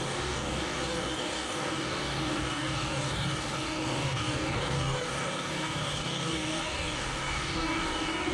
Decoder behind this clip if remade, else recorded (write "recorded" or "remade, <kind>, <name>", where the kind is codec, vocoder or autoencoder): remade, codec, DAC